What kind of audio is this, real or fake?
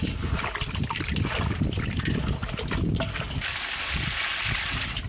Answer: real